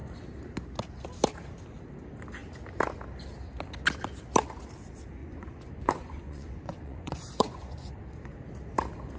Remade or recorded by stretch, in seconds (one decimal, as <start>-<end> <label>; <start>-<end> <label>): 0.0-5.2 recorded; 5.2-7.9 remade; 7.9-9.2 recorded

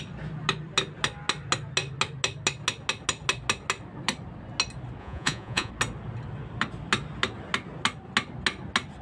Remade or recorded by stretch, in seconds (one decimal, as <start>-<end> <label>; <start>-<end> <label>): 0.0-5.0 recorded; 5.0-5.7 remade; 5.7-9.0 recorded

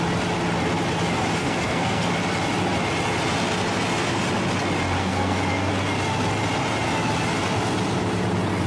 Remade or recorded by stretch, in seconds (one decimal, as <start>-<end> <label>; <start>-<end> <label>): 0.0-1.4 recorded; 1.4-2.1 remade; 2.1-5.0 recorded; 5.0-5.7 remade; 5.7-8.7 recorded

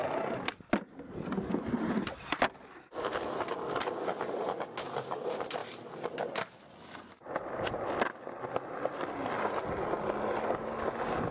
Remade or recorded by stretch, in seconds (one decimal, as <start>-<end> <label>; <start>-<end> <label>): 0.0-11.3 recorded

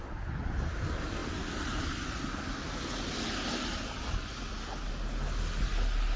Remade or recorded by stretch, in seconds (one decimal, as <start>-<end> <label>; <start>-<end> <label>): 0.0-6.2 recorded